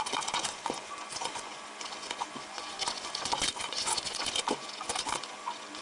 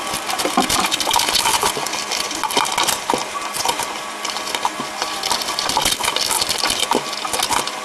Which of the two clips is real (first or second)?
second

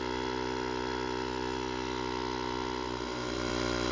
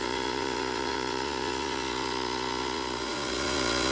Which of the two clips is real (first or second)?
first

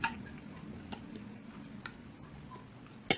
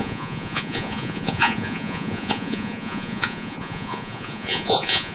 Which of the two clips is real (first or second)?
first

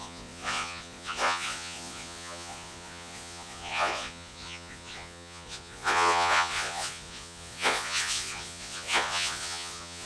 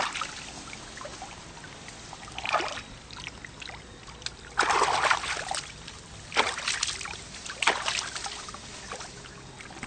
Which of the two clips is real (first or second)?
second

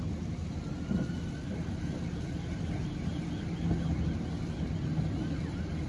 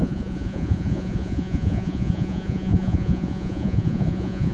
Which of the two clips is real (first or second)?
first